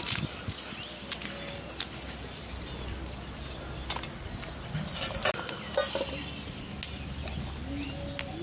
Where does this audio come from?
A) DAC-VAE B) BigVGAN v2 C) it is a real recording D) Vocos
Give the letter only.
C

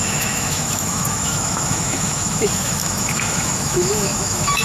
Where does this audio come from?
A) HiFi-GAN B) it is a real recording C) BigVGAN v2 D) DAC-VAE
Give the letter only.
D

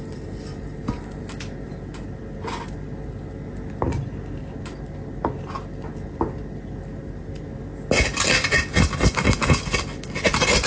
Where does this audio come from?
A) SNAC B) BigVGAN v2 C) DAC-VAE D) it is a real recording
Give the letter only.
D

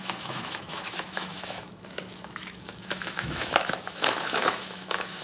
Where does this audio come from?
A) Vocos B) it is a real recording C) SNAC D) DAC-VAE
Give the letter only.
D